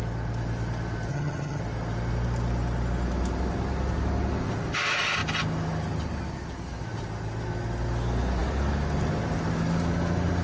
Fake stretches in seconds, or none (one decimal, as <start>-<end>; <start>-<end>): 1.1-1.6